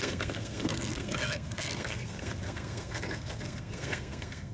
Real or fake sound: fake